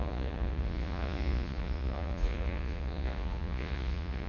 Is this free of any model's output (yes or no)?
no